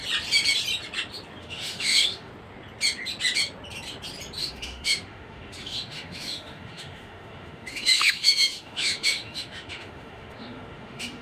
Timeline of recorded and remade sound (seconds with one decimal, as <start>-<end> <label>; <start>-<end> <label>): 0.0-1.4 recorded; 1.4-2.3 remade; 2.3-4.4 recorded; 4.4-11.2 remade